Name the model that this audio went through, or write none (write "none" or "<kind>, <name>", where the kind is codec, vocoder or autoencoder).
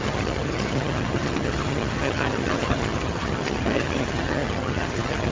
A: vocoder, HiFi-GAN